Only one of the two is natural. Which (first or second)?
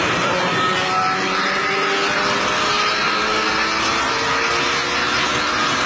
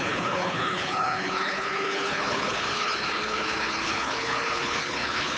first